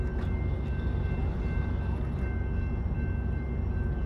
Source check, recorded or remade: recorded